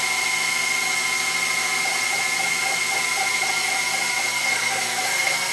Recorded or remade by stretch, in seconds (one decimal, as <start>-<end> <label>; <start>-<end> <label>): 0.0-4.3 recorded; 4.3-5.5 remade